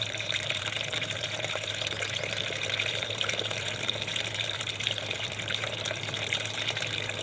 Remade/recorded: remade